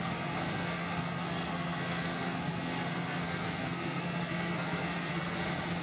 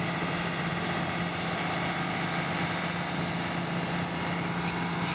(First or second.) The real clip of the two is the second